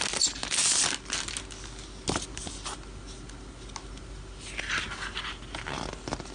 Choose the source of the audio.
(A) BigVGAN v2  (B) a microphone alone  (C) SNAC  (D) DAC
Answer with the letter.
B